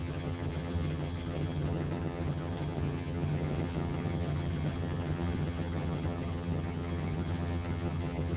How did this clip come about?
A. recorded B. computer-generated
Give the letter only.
B